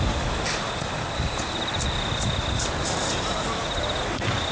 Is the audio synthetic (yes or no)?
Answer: no